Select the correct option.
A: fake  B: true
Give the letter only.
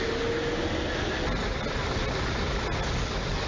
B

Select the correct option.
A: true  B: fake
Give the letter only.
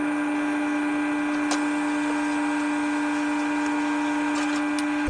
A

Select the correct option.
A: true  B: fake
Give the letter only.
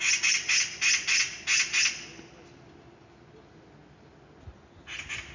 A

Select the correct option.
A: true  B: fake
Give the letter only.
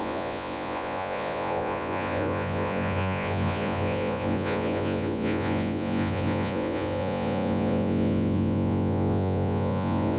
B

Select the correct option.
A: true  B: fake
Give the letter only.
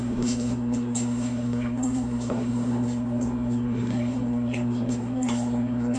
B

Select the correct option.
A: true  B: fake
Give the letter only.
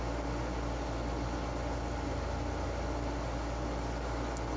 A